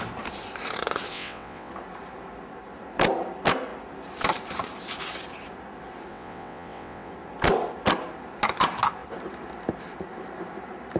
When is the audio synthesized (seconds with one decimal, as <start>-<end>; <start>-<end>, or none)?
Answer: 1.1-1.7; 6.1-7.1